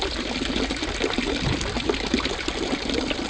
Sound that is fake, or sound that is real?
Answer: real